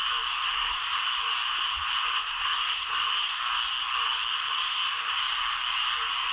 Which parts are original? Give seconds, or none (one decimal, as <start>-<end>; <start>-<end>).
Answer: 0.0-0.4; 1.0-2.1; 3.4-4.3; 5.2-6.3